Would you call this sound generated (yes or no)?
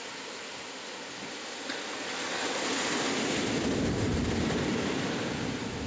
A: no